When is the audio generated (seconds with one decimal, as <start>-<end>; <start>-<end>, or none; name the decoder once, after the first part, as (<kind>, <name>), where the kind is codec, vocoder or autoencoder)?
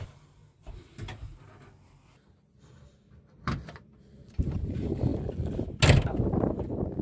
0.0-0.4 (vocoder, BigVGAN v2); 4.3-5.1